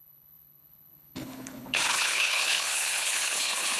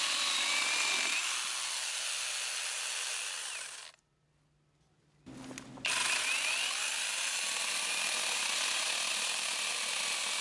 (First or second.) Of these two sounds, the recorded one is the second